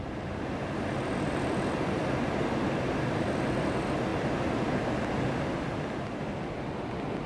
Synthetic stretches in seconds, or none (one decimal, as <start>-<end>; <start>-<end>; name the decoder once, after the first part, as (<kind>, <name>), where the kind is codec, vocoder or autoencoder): none